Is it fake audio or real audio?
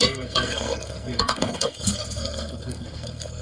fake